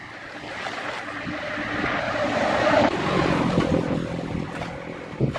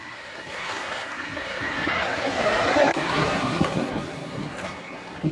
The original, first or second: first